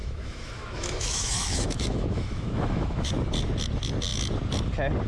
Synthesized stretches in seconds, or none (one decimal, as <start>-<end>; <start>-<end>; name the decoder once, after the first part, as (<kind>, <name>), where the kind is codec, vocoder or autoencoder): 0.0-3.1 (autoencoder, DAC-VAE)